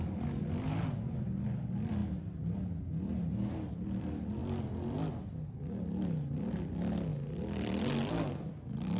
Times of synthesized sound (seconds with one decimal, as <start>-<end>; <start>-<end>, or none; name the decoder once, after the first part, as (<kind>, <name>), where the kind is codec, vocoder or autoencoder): none